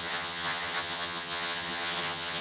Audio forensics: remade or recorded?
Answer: remade